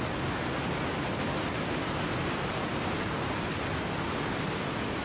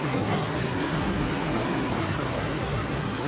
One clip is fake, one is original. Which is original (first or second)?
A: first